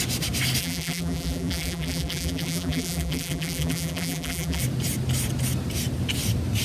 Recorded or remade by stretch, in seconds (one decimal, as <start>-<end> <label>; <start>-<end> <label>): 0.0-0.6 recorded; 0.6-4.6 remade; 4.6-6.6 recorded